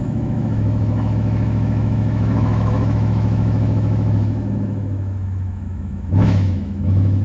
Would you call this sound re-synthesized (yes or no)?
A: yes